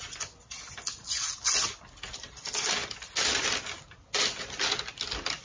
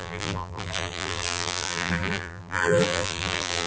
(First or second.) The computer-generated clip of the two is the second